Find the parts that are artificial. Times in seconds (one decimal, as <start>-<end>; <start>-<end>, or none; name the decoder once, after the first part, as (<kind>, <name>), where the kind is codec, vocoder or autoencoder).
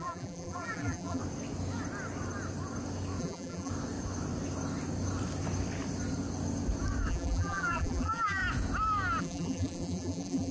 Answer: 0.0-1.2 (vocoder, BigVGAN v2); 3.2-3.7; 7.1-8.4; 9.2-10.5